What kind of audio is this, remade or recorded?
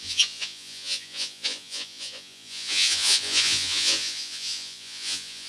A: remade